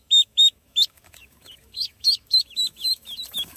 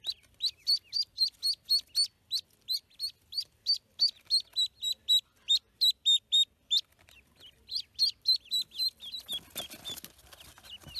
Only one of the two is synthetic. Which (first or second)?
first